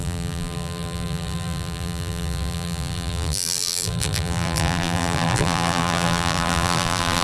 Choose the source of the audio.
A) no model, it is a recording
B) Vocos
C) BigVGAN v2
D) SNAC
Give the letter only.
C